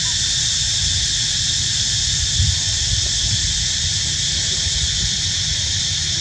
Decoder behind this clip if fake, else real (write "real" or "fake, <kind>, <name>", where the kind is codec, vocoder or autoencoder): real